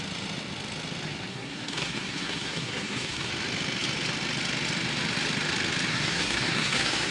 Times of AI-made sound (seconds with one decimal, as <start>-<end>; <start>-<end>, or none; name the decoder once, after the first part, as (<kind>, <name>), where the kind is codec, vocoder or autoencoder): 1.3-3.3 (codec, SNAC); 5.9-7.1